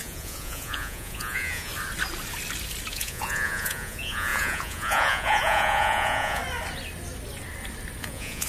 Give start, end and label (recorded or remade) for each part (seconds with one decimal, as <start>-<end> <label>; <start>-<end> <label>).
0.0-1.7 remade; 1.7-2.9 recorded; 2.9-6.4 remade; 6.4-8.0 recorded; 8.0-8.5 remade